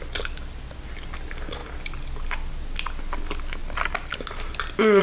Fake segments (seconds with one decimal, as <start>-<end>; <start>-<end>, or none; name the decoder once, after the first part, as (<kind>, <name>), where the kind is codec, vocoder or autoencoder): none